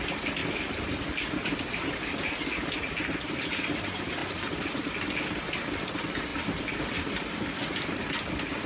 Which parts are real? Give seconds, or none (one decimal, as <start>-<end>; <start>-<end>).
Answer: 0.0-8.7